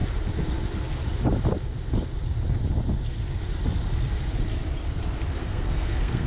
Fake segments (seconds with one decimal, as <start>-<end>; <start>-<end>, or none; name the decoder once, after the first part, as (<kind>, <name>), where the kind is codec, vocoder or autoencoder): 5.4-6.3 (codec, SNAC)